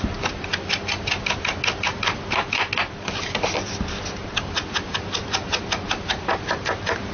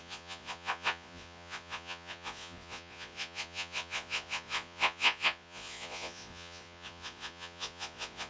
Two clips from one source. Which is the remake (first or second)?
second